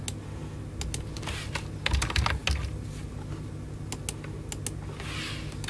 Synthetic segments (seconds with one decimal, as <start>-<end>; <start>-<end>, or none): none